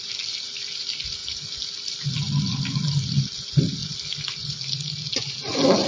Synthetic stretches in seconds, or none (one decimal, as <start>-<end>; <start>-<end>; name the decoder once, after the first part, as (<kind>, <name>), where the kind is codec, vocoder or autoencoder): none